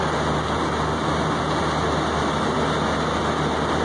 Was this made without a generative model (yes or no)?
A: yes